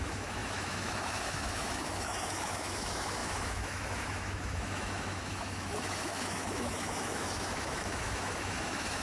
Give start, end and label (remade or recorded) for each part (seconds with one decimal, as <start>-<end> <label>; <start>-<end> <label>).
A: 0.0-9.0 remade